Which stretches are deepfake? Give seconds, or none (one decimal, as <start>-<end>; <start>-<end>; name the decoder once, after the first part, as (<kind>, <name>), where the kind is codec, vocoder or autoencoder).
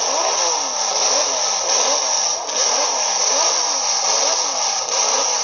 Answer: 0.0-5.4 (vocoder, BigVGAN v2)